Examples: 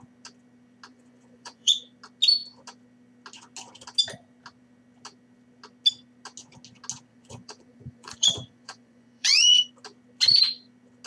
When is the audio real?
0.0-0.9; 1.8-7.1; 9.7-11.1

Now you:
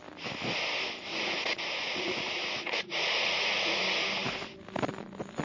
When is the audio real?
0.0-1.1; 3.8-5.4

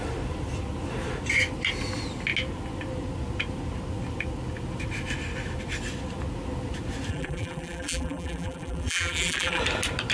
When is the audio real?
0.0-7.1; 9.6-10.1

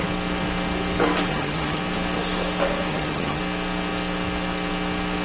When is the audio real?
0.0-1.3; 1.8-2.9; 3.4-5.2

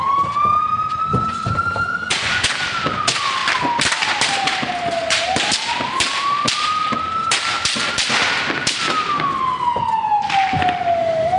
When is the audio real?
0.0-1.1; 2.5-11.4

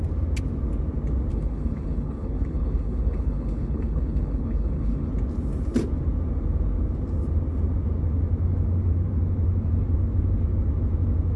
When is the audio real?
0.0-1.3; 5.1-11.4

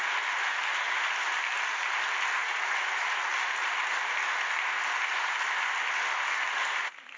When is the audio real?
0.0-7.2